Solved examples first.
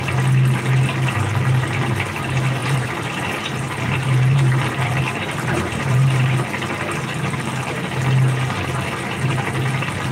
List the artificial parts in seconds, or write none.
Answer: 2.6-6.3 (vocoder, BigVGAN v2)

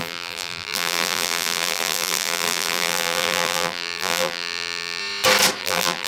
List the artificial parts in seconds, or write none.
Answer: 0.0-5.0 (vocoder, BigVGAN v2); 5.6-6.1

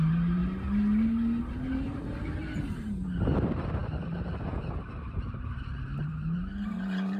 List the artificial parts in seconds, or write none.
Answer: 0.0-0.4 (vocoder, BigVGAN v2); 1.8-7.2

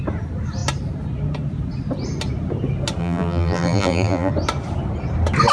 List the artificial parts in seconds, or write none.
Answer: 3.0-4.3 (vocoder, BigVGAN v2)

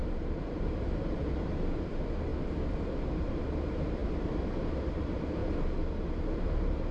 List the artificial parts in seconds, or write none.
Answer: 0.0-2.3 (vocoder, BigVGAN v2); 2.8-5.4; 6.4-6.9

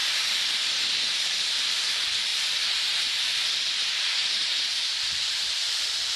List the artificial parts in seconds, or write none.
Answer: 0.0-2.3 (vocoder, BigVGAN v2); 3.1-6.2

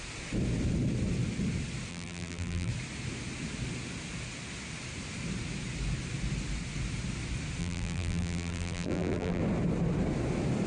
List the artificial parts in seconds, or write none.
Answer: 1.9-2.7 (vocoder, BigVGAN v2); 7.6-9.4